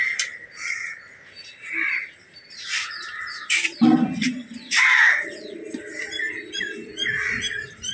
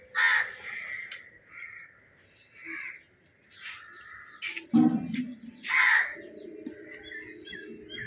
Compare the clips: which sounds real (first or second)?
second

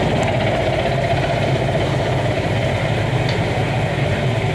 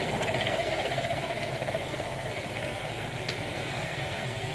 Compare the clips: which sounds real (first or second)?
first